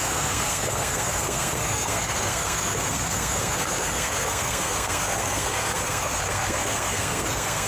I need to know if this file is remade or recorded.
remade